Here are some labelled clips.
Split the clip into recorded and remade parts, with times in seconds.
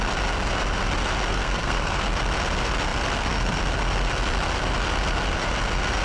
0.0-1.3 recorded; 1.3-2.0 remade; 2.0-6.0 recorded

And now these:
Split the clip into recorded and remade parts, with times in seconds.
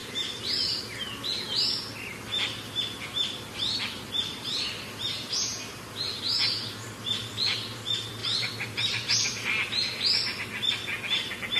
0.0-0.8 remade; 0.8-4.2 recorded; 4.2-6.2 remade; 6.2-8.2 recorded; 8.2-10.4 remade; 10.4-11.6 recorded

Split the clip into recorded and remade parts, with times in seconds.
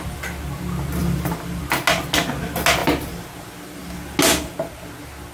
0.0-1.0 recorded; 1.0-1.6 remade; 1.6-5.3 recorded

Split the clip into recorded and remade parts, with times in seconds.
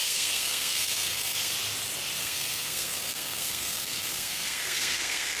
0.0-1.5 remade; 1.5-2.2 recorded; 2.2-5.4 remade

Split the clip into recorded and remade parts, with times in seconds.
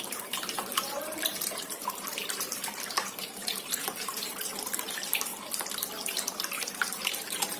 0.0-5.3 remade; 5.3-5.9 recorded; 5.9-7.6 remade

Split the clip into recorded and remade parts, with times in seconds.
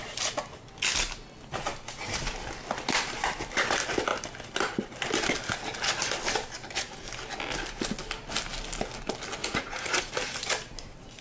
0.0-9.4 recorded; 9.4-10.1 remade; 10.1-11.2 recorded